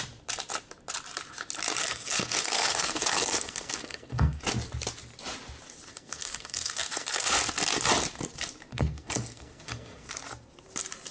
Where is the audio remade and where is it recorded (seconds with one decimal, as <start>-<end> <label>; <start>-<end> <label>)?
0.0-1.8 recorded; 1.8-4.4 remade; 4.4-5.9 recorded; 5.9-7.4 remade; 7.4-8.7 recorded; 8.7-10.1 remade; 10.1-11.1 recorded